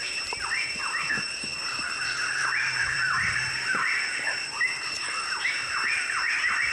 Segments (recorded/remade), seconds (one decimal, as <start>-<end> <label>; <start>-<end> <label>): 0.0-6.7 remade